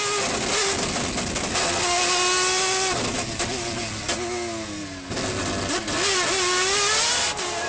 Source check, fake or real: real